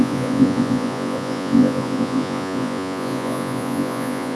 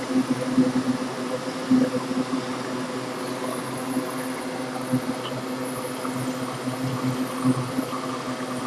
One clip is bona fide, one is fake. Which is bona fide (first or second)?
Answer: second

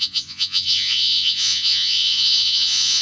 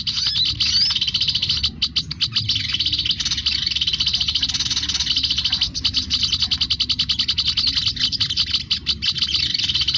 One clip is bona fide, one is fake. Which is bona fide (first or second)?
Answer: second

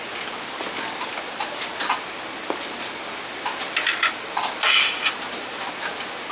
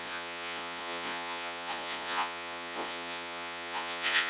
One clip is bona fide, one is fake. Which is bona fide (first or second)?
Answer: first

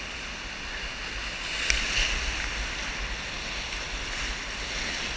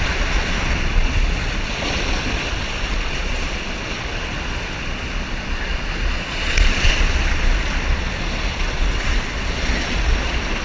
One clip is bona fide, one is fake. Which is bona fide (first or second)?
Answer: first